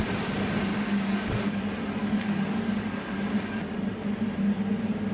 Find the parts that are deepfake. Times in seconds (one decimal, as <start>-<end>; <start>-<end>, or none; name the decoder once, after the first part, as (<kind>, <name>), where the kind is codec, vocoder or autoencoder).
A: 0.7-1.6 (codec, DAC); 2.0-3.6